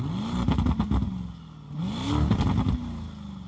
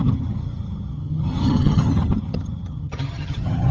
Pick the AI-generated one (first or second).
second